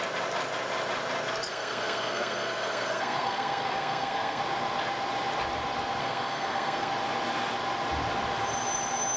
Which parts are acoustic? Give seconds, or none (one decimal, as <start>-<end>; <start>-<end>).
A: 0.0-1.5; 4.4-6.0; 6.9-9.2